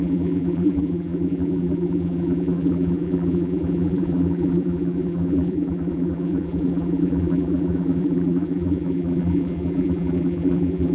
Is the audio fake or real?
fake